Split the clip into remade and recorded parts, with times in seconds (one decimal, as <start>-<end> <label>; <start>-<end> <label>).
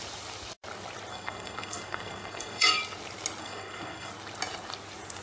0.0-1.1 recorded; 1.1-2.8 remade; 2.8-3.4 recorded; 3.4-4.1 remade; 4.1-5.2 recorded